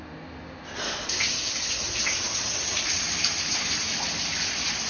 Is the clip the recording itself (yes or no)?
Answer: yes